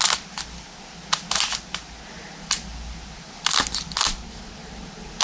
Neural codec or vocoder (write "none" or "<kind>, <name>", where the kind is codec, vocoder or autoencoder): none